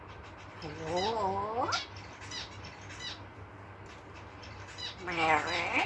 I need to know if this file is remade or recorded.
recorded